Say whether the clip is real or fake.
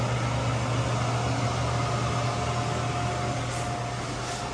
real